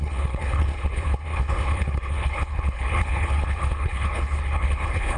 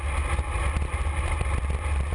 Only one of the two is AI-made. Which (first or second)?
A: first